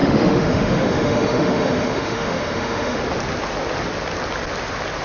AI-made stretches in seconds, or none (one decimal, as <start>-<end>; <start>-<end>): 0.0-3.0

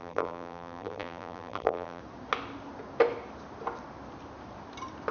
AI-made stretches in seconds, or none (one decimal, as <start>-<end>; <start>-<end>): 0.0-2.0

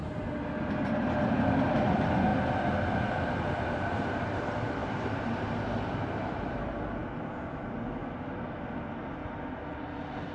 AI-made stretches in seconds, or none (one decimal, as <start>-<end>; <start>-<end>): 0.8-2.3; 3.3-7.0; 8.0-10.3

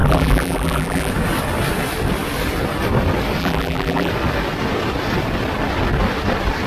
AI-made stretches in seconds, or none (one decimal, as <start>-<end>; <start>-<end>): 0.0-1.1; 3.4-4.1

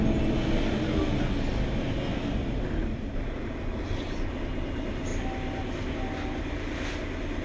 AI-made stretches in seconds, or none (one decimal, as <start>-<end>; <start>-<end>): none

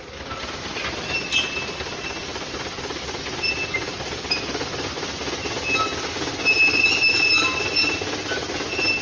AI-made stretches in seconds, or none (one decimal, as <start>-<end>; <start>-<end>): none

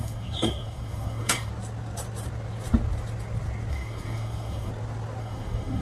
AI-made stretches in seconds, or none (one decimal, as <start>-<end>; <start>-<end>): 0.0-1.5; 3.7-4.7; 5.2-5.8

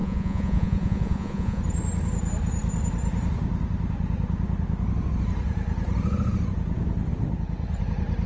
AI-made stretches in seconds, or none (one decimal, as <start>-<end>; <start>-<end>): 0.0-1.6